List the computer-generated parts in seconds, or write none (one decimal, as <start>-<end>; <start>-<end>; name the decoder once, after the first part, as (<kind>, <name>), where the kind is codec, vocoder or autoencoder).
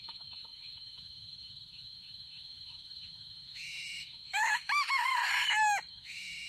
0.0-5.3 (autoencoder, DAC-VAE); 5.9-6.5